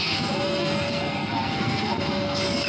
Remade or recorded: remade